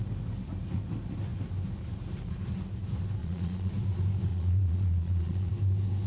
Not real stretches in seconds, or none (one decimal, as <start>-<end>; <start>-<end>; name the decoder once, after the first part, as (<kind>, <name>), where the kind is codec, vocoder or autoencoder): 3.2-3.7 (vocoder, Vocos); 4.3-5.5

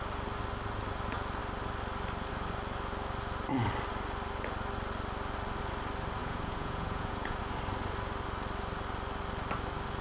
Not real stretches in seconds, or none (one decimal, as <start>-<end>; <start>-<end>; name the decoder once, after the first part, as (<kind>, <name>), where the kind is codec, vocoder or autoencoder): 6.2-7.4 (vocoder, Vocos)

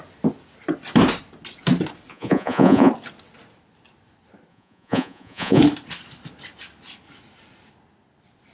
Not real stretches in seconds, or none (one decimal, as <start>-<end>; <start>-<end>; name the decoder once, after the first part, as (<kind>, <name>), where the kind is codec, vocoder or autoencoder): 2.1-2.9 (vocoder, Vocos); 4.5-5.6

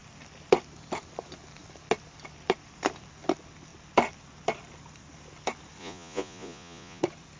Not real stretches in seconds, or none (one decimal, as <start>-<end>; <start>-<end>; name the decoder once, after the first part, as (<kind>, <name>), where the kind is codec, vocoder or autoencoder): 5.8-7.0 (vocoder, Vocos)

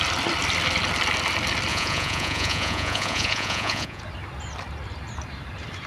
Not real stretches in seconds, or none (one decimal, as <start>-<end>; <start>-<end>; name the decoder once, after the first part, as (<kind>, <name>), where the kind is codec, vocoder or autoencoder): 1.7-4.0 (vocoder, Vocos)

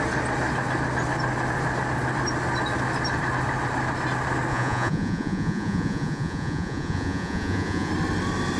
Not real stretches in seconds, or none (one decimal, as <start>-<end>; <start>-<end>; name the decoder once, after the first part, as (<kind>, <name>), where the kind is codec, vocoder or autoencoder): 4.5-7.9 (vocoder, Vocos)

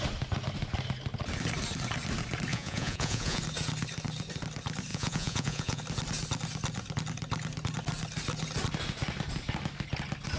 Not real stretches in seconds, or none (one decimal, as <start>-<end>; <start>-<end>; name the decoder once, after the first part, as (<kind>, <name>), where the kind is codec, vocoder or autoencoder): 2.5-3.4 (vocoder, Vocos); 4.9-5.8